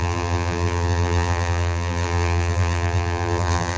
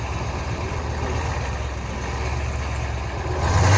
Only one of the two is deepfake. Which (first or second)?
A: first